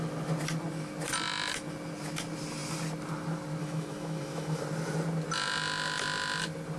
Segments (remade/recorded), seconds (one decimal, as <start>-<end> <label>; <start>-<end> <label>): 0.0-3.6 recorded; 3.6-4.6 remade; 4.6-6.8 recorded